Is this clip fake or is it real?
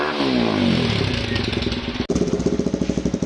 real